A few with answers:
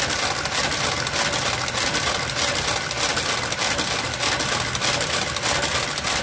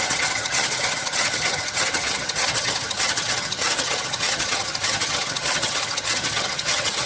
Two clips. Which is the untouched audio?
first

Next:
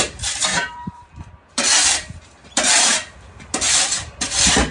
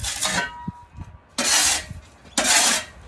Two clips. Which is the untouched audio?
second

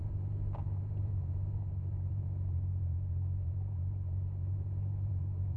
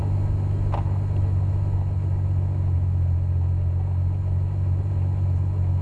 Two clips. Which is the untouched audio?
second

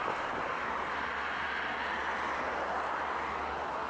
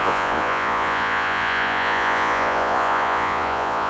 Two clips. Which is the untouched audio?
first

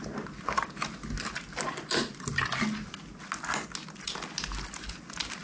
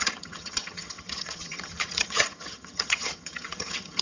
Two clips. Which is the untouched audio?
first